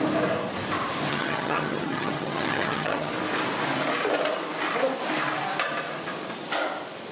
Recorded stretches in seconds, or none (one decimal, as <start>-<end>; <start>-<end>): 0.0-1.1; 3.1-7.1